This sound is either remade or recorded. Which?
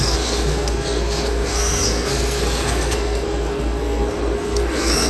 remade